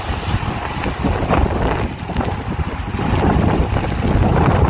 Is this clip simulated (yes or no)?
no